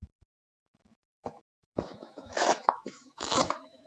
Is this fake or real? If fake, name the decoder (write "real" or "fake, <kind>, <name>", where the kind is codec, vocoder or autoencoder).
fake, autoencoder, DAC-VAE